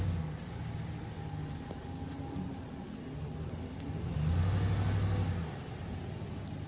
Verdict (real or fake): real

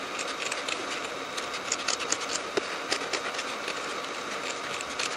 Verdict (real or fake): real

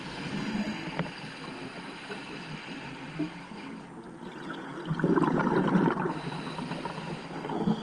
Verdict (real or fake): real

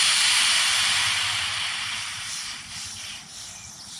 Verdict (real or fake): fake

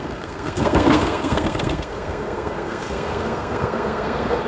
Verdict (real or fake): fake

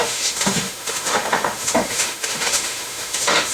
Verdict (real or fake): fake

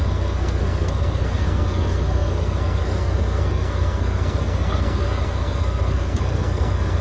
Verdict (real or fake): fake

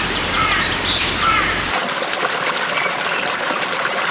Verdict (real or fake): fake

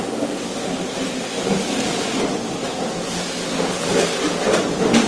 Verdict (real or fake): real